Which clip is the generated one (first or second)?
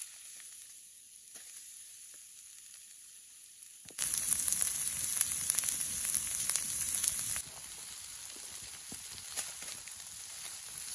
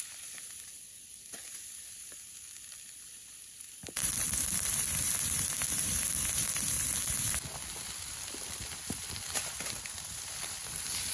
second